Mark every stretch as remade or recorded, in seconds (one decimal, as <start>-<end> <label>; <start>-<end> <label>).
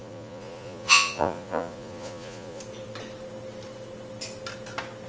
0.0-2.6 remade; 2.6-5.1 recorded